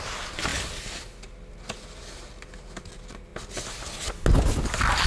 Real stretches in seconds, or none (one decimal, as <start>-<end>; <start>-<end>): 0.0-5.1